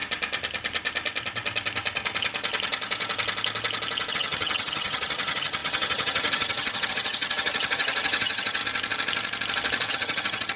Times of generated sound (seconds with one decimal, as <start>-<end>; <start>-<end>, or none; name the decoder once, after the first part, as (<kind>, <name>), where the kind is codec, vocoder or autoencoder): 4.1-8.6 (vocoder, HiFi-GAN); 9.9-10.6